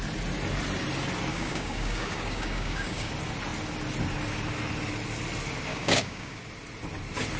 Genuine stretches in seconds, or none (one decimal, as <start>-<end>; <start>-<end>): 0.0-1.3; 3.1-5.7; 6.4-7.4